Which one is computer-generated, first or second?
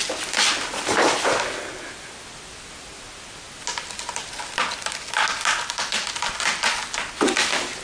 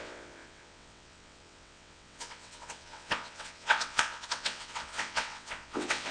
second